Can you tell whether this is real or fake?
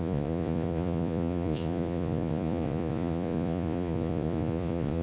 fake